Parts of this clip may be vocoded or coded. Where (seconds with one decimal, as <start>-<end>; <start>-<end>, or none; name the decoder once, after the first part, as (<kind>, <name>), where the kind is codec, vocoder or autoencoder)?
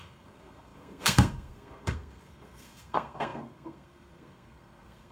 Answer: 0.0-5.1 (codec, SNAC)